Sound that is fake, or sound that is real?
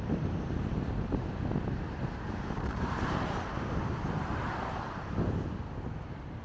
real